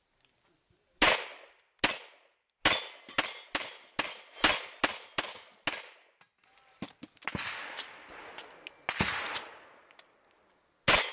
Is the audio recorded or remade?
recorded